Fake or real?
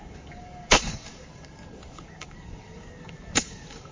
fake